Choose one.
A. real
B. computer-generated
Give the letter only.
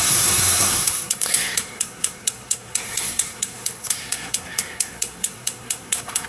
B